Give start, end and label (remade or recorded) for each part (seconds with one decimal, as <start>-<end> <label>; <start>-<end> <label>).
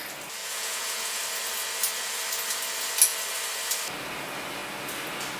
0.0-0.4 recorded; 0.4-1.2 remade; 1.2-5.4 recorded